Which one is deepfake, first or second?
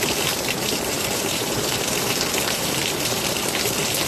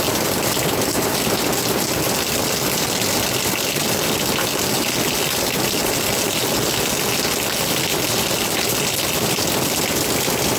first